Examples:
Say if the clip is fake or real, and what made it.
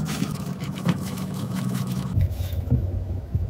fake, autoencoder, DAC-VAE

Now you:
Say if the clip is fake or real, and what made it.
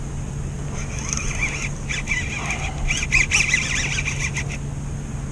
real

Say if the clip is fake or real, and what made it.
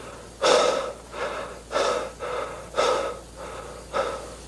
real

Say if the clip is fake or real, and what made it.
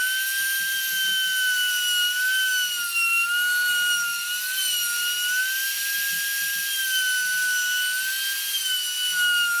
real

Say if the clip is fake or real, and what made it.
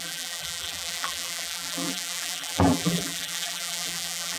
fake, vocoder, BigVGAN v2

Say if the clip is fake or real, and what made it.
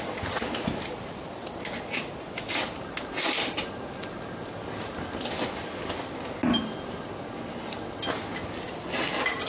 real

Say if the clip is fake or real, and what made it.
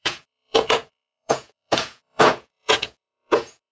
fake, vocoder, Vocos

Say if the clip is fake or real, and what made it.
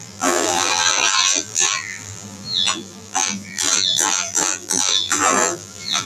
fake, vocoder, BigVGAN v2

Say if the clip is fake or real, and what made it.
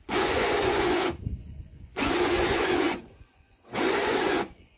fake, vocoder, Vocos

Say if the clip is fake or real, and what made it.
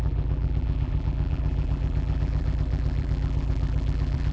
fake, vocoder, BigVGAN v2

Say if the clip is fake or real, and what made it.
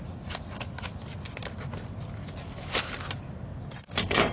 real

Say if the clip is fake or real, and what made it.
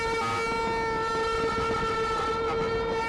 real